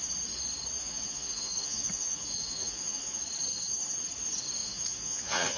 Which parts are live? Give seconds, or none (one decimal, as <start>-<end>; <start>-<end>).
0.0-0.8; 3.2-4.6